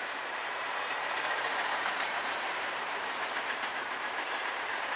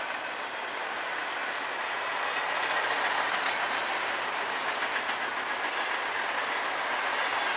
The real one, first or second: second